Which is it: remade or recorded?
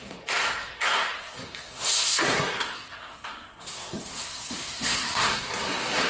remade